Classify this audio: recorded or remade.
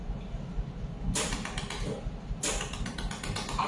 recorded